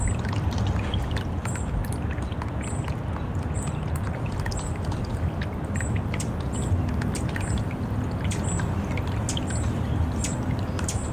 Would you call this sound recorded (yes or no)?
yes